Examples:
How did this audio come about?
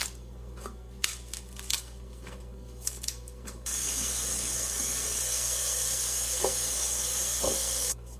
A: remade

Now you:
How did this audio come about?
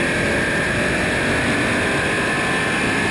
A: recorded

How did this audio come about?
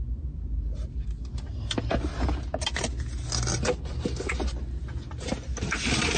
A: recorded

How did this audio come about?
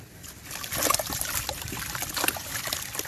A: recorded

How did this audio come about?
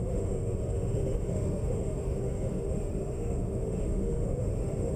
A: remade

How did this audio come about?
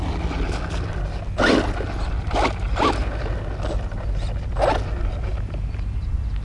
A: recorded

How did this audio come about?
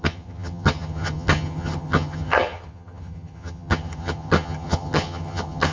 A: remade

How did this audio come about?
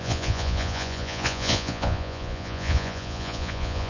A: remade